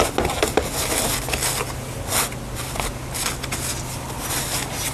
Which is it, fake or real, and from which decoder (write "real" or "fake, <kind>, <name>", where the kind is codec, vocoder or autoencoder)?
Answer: real